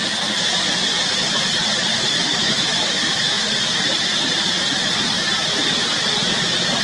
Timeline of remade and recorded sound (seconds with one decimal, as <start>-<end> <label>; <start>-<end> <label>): 0.0-1.9 recorded; 1.9-3.5 remade; 3.5-6.8 recorded